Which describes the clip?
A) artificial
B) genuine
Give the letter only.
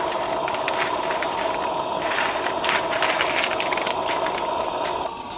B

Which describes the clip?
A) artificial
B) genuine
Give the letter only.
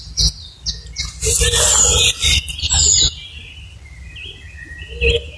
B